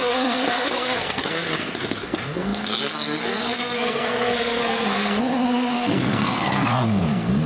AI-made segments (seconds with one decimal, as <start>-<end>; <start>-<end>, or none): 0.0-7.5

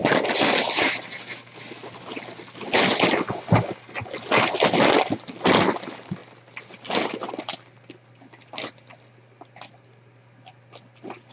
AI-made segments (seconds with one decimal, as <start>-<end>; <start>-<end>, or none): none

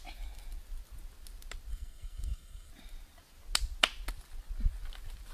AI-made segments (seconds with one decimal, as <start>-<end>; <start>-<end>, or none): 1.7-2.7